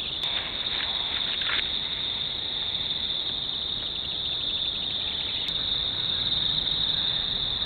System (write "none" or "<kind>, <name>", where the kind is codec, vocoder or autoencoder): none